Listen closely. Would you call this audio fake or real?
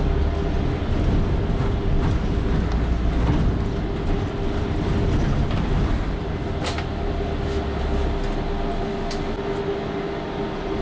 real